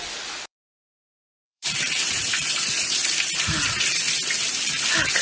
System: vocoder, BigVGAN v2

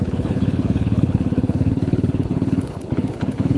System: codec, HILCodec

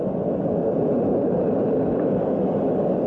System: none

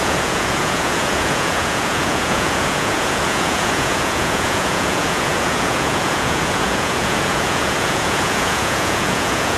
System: vocoder, Vocos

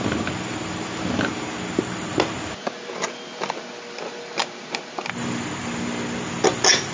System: none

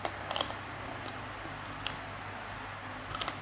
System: none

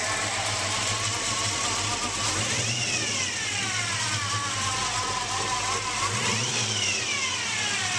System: none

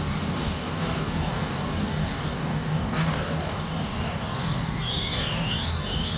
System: codec, DAC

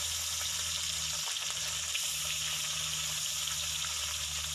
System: none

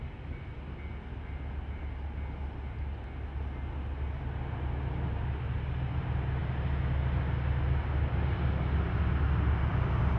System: none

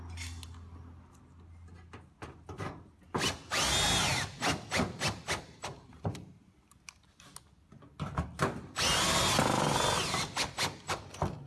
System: none